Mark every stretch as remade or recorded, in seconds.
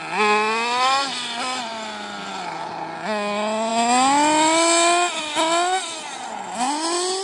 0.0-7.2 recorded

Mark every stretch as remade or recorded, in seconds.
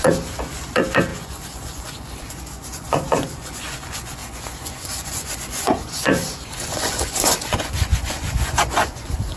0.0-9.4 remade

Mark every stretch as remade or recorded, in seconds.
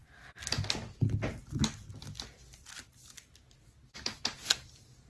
0.0-5.1 recorded